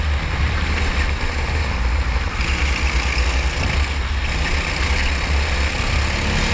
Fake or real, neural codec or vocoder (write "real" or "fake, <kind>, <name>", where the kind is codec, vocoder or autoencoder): real